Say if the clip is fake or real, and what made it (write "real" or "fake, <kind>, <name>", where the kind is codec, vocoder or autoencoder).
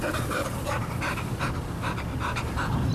real